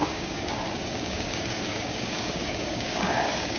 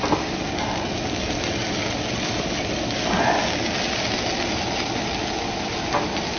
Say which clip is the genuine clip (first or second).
second